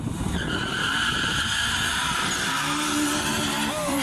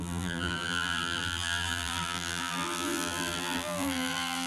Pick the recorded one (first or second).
first